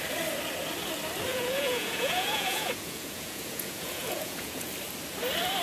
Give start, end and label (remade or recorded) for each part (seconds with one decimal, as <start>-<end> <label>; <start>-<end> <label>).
0.0-1.3 recorded; 1.3-4.7 remade; 4.7-5.6 recorded